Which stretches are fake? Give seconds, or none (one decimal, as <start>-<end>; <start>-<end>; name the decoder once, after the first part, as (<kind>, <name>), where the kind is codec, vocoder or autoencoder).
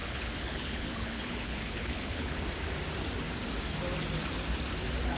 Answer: 0.0-2.4 (codec, HILCodec)